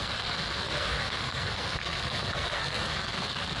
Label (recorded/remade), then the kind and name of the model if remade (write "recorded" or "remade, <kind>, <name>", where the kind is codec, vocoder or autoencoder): remade, codec, SNAC